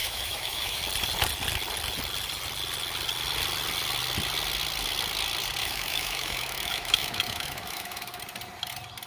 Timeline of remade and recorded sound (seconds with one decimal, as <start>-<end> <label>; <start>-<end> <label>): 0.0-0.8 remade; 0.8-5.6 recorded; 5.6-8.2 remade; 8.2-9.1 recorded